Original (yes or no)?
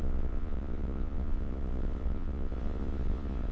no